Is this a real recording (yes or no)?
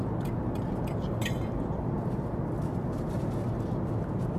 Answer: yes